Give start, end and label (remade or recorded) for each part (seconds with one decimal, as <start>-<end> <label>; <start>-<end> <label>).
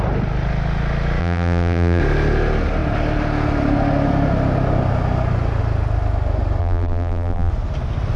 0.0-1.2 recorded; 1.2-2.0 remade; 2.0-6.6 recorded; 6.6-7.5 remade; 7.5-8.2 recorded